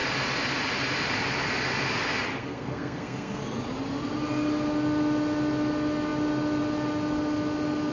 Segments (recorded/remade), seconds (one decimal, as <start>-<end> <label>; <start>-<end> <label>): 0.0-2.4 recorded; 2.4-3.4 remade; 3.4-7.9 recorded